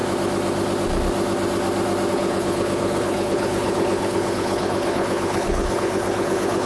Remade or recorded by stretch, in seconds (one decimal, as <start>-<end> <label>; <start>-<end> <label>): 0.0-2.1 recorded; 2.1-6.7 remade